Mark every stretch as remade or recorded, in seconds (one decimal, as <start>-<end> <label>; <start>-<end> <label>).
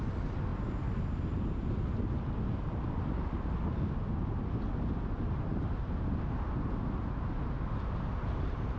0.0-8.8 recorded